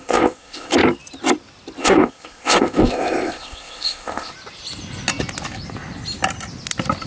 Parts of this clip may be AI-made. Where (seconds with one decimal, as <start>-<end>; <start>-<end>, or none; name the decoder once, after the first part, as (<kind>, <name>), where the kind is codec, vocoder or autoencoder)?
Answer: 0.0-0.7 (codec, ZipCodec); 1.8-4.3

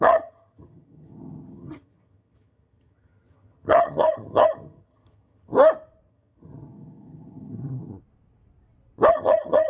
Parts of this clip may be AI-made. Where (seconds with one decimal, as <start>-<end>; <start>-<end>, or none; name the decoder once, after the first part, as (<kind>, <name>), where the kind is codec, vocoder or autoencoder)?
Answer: 0.0-5.5 (vocoder, HiFi-GAN); 6.1-7.9; 9.1-9.7

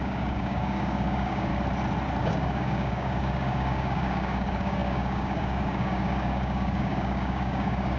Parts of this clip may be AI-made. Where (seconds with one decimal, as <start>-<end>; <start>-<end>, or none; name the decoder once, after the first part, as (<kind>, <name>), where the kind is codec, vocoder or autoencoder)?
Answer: 0.0-1.5 (codec, DAC); 2.2-8.0

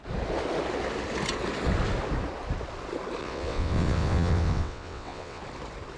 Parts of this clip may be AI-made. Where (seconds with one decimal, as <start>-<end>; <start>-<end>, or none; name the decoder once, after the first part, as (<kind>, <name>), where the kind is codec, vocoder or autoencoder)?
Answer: 3.2-5.4 (vocoder, WaveNeXt)

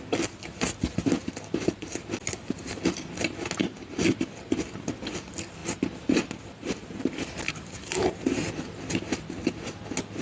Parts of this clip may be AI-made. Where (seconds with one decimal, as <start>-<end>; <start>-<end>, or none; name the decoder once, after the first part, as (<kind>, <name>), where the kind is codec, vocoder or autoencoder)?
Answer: none

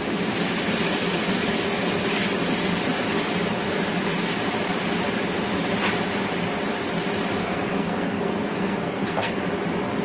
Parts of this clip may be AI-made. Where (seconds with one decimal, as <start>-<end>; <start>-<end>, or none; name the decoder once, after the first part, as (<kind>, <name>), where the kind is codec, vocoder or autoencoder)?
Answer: 7.4-9.4 (codec, SNAC)

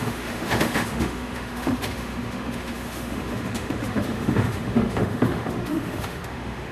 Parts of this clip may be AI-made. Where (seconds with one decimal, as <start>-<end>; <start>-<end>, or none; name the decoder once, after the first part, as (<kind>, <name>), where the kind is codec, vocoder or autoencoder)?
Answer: 0.0-6.7 (autoencoder, DAC-VAE)